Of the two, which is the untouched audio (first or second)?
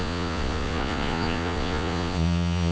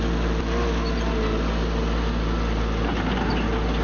second